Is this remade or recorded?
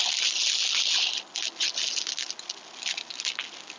recorded